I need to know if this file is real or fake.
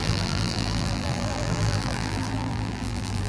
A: fake